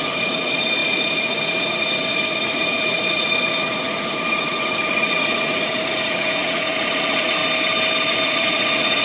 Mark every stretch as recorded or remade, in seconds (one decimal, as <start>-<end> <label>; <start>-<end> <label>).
0.0-7.4 remade; 7.4-8.1 recorded; 8.1-9.0 remade

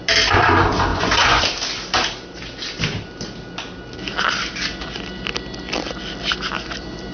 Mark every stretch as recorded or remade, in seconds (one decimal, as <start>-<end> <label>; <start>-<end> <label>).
0.0-0.9 recorded; 0.9-1.4 remade; 1.4-7.1 recorded

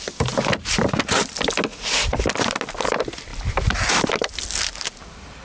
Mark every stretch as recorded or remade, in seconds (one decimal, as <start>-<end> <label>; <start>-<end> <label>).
0.0-1.7 recorded; 1.7-2.2 remade; 2.2-5.4 recorded

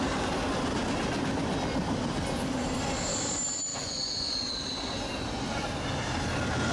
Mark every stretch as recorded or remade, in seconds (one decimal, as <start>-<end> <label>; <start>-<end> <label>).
0.0-3.7 recorded; 3.7-4.5 remade; 4.5-6.7 recorded

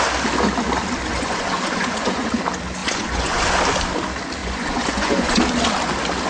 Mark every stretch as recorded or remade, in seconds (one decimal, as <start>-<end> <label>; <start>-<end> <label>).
0.0-1.1 recorded; 1.1-2.3 remade; 2.3-2.8 recorded; 2.8-3.5 remade; 3.5-4.4 recorded; 4.4-5.4 remade; 5.4-6.3 recorded

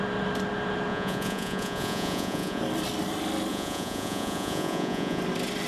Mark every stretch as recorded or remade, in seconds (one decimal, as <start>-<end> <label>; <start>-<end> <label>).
0.0-0.9 recorded; 0.9-2.6 remade; 2.6-3.5 recorded; 3.5-5.2 remade; 5.2-5.7 recorded